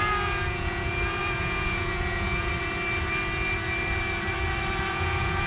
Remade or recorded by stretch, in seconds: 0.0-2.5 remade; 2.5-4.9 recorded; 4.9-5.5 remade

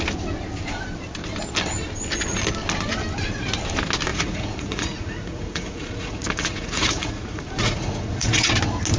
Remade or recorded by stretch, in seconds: 0.0-4.1 recorded; 4.1-8.5 remade; 8.5-9.0 recorded

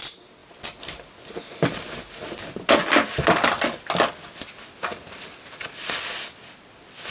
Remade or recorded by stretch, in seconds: 0.0-7.1 recorded

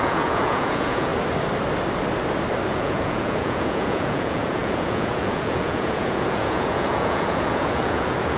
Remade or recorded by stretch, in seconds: 0.0-1.1 remade; 1.1-2.7 recorded; 2.7-8.4 remade